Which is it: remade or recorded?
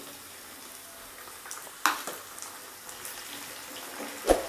recorded